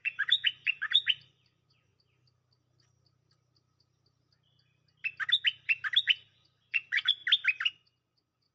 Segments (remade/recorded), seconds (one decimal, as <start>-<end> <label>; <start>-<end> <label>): 0.0-1.9 remade; 1.9-6.0 recorded; 6.0-7.2 remade; 7.2-7.7 recorded; 7.7-8.5 remade

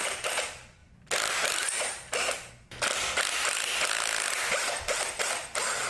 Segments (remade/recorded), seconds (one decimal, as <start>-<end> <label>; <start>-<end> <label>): 0.0-0.8 recorded; 0.8-2.5 remade; 2.5-5.9 recorded

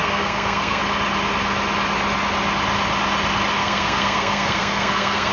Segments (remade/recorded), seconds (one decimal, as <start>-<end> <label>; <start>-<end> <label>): 0.0-0.8 remade; 0.8-3.6 recorded; 3.6-5.3 remade

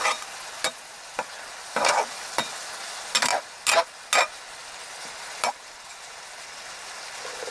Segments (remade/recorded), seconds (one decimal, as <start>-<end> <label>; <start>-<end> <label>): 0.0-7.5 recorded

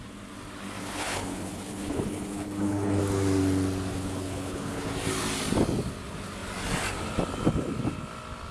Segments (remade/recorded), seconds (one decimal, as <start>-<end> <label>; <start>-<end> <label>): 0.0-0.8 recorded; 0.8-3.0 remade; 3.0-3.9 recorded; 3.9-4.9 remade; 4.9-8.5 recorded

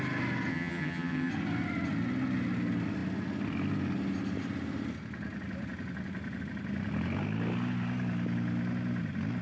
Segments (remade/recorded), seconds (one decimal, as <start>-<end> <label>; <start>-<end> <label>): 0.0-0.5 recorded; 0.5-1.3 remade; 1.3-9.4 recorded

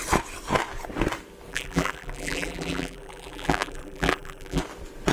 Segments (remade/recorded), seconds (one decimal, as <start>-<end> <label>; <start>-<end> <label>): 0.0-1.5 recorded; 1.5-4.6 remade; 4.6-5.1 recorded